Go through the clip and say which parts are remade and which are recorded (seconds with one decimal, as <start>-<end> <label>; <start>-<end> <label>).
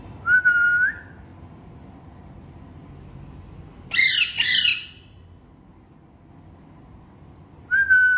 0.0-8.2 recorded